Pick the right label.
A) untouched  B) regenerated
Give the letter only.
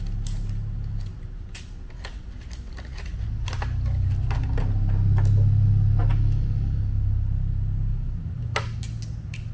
A